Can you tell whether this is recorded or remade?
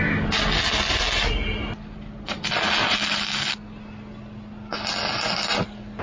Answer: recorded